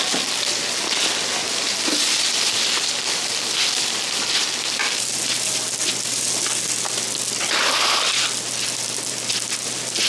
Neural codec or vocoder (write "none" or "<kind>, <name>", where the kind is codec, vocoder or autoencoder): none